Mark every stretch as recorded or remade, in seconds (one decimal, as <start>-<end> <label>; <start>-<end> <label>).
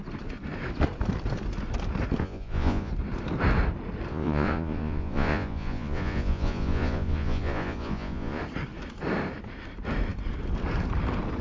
0.0-2.2 recorded; 2.2-2.9 remade; 2.9-4.1 recorded; 4.1-8.4 remade; 8.4-11.4 recorded